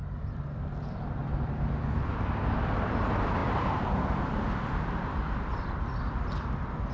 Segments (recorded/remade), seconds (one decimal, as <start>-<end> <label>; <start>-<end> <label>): 0.0-6.9 remade